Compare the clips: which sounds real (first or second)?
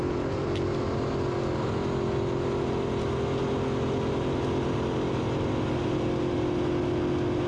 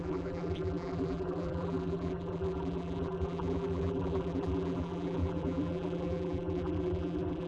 first